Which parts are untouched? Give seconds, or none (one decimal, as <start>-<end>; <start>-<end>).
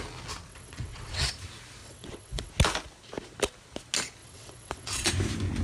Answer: 0.0-0.5; 1.3-1.8; 2.5-4.2; 5.1-5.6